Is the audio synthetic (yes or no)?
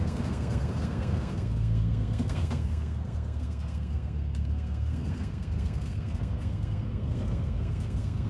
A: yes